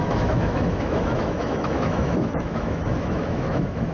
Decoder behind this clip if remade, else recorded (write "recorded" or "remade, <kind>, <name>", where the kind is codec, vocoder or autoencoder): remade, autoencoder, DAC-VAE